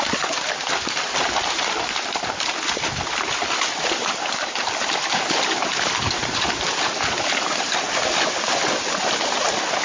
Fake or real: real